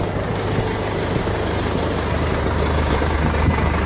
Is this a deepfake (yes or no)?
yes